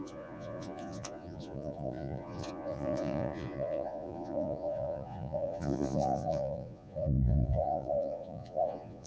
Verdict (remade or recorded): remade